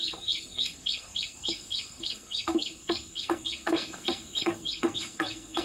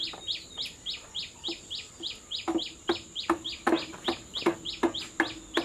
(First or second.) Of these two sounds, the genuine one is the second